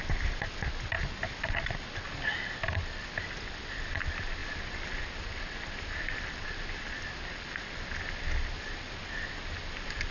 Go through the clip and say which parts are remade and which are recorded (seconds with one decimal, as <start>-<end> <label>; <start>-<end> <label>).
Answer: 0.0-10.1 recorded